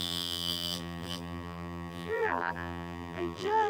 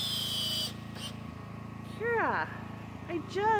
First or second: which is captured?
second